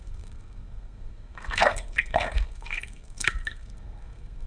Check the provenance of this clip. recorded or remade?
remade